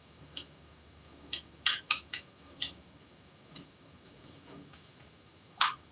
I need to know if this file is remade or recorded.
remade